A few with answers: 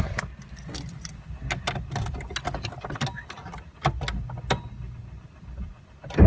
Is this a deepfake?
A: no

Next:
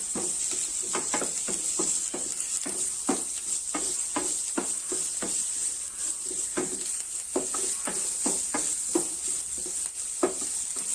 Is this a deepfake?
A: no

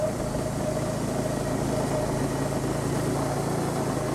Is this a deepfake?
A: no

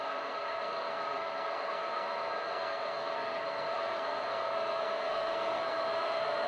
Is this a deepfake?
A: yes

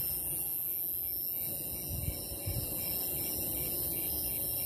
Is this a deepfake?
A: no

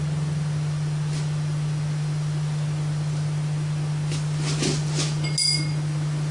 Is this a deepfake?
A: no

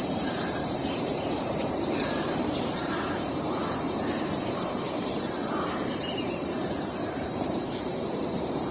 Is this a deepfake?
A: yes